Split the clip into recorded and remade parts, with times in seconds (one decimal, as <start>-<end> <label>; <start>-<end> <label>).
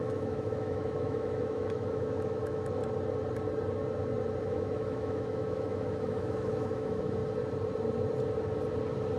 0.0-2.8 remade; 2.8-4.4 recorded; 4.4-7.2 remade; 7.2-9.2 recorded